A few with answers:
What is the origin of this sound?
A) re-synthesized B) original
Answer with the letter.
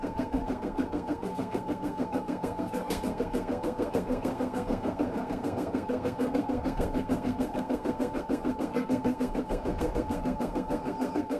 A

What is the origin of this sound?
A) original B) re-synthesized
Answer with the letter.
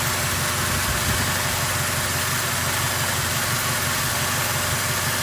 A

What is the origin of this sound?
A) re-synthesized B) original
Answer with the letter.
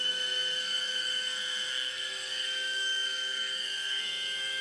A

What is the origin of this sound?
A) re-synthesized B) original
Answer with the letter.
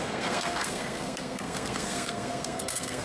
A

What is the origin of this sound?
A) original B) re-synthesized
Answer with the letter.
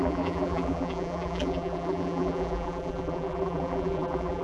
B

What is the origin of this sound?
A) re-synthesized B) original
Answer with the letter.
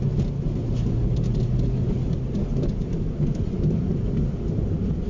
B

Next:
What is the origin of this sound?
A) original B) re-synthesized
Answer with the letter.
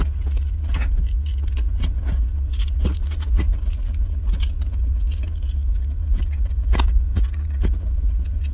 B